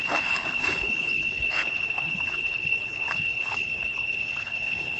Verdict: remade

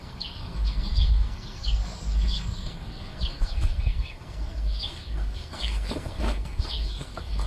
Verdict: remade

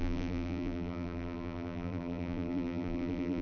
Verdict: remade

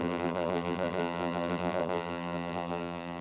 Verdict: remade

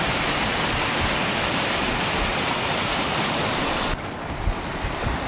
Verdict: recorded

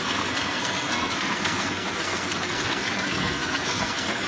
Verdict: remade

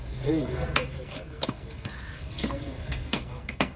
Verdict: remade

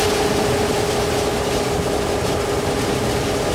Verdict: recorded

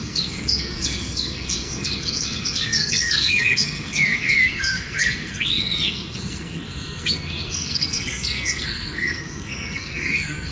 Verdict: remade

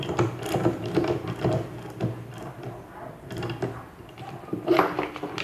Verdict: recorded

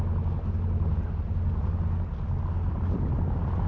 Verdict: recorded